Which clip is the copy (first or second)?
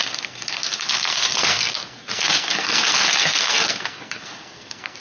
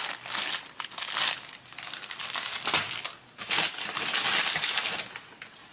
first